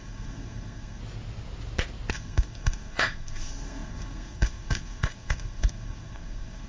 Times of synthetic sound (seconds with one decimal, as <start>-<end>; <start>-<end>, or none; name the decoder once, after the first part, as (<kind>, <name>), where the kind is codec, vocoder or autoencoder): 0.0-1.0 (codec, SNAC); 2.1-6.7